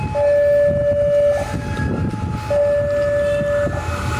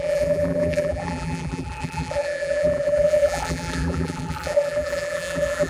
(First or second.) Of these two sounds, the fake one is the second